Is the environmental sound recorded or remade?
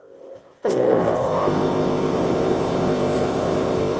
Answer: remade